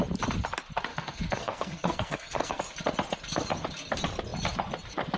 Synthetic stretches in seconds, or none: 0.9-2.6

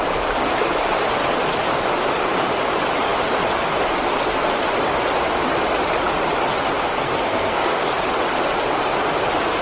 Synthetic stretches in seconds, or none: 6.9-7.8

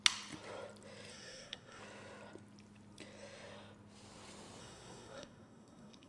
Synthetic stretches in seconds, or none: 1.1-1.8; 4.6-6.1